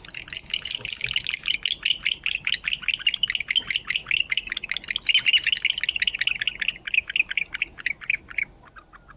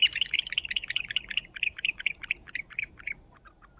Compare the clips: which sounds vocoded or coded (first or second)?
second